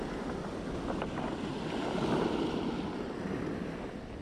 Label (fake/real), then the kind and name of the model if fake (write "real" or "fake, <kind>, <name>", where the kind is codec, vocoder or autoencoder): real